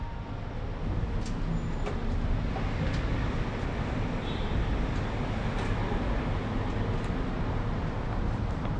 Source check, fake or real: real